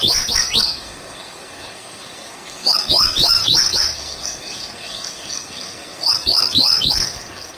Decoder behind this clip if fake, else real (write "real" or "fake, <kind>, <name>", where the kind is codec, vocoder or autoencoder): fake, codec, SNAC